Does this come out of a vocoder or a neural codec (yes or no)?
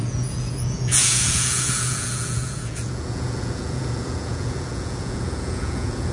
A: yes